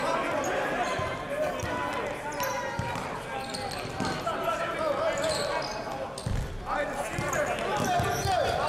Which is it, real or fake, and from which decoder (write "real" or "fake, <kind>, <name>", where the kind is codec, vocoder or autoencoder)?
real